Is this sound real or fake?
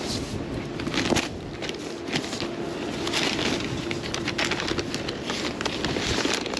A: real